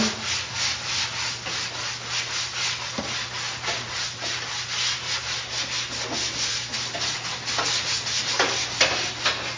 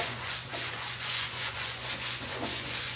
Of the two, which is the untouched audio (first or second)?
first